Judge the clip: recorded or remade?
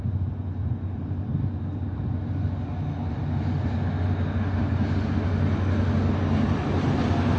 recorded